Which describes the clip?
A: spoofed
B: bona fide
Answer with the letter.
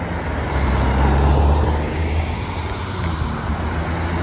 B